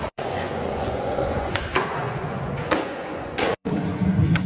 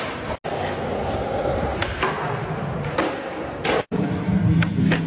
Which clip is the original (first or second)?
second